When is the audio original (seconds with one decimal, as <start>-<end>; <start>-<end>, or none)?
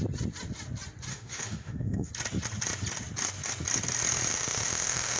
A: 0.0-1.1; 2.1-4.3